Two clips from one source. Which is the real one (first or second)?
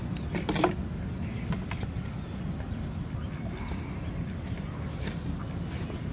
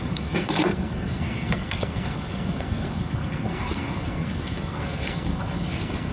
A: first